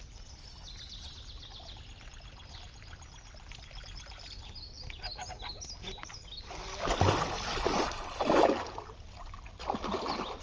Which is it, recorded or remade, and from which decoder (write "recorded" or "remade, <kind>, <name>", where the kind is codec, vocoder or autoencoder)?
recorded